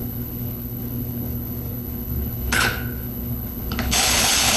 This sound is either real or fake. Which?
fake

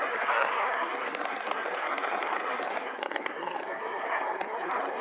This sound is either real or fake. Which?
fake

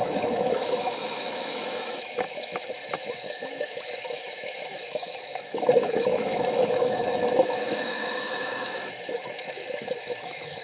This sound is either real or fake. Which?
fake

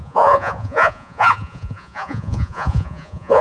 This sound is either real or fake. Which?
fake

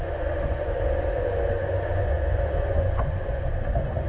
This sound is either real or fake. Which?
fake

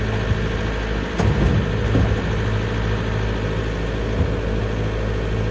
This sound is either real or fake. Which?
real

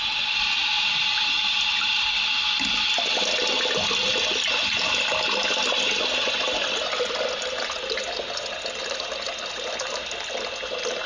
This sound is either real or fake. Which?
real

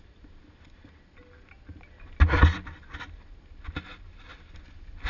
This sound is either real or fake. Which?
real